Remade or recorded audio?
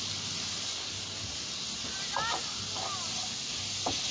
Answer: recorded